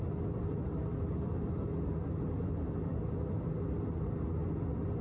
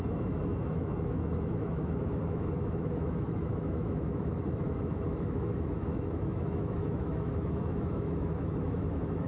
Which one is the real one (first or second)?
first